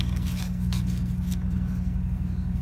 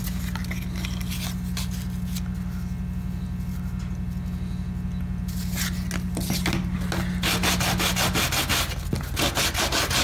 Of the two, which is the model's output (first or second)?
first